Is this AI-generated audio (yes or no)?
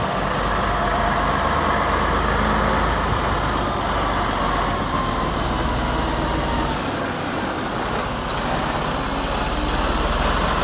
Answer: no